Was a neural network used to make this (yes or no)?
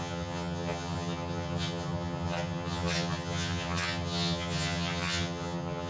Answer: yes